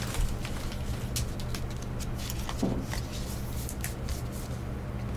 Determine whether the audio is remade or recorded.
recorded